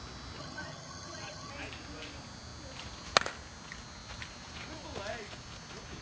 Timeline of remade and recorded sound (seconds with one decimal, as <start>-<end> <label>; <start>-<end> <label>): 0.0-0.4 recorded; 0.4-1.5 remade; 1.5-6.0 recorded